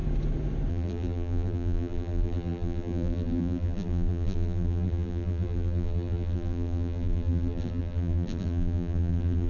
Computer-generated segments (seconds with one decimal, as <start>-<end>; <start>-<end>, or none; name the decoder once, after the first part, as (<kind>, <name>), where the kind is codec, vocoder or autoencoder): 0.7-9.5 (vocoder, BigVGAN v2)